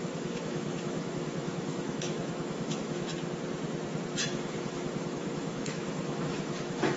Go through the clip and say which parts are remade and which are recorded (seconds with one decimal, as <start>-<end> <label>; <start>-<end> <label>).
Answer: 0.0-3.1 remade; 3.1-4.3 recorded; 4.3-7.0 remade